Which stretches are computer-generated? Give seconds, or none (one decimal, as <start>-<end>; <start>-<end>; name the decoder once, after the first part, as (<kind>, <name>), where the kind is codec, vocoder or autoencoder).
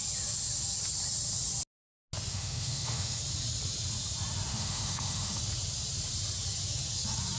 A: 2.3-3.2 (autoencoder, DAC-VAE); 4.5-5.4